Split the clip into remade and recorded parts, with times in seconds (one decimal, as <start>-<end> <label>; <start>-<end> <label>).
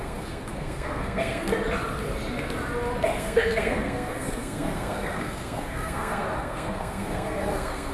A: 0.0-1.5 remade; 1.5-3.2 recorded; 3.2-7.9 remade